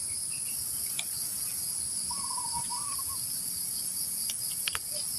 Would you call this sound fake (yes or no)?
yes